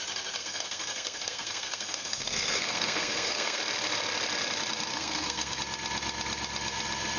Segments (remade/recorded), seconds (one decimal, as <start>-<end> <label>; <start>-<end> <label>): 0.0-0.4 recorded; 0.4-3.6 remade; 3.6-4.9 recorded; 4.9-5.6 remade; 5.6-7.2 recorded